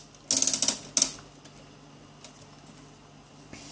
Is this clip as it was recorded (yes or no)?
yes